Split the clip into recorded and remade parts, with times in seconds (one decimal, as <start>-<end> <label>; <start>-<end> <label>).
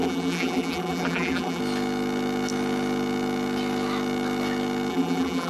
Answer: 0.0-1.6 remade; 1.6-4.9 recorded; 4.9-5.5 remade